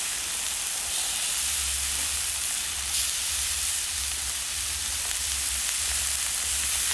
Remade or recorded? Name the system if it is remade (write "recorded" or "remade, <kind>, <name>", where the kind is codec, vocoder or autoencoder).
recorded